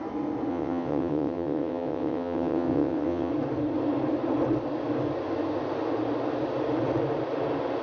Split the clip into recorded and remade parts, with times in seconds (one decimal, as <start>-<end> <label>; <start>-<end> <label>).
0.0-0.5 recorded; 0.5-3.3 remade; 3.3-7.8 recorded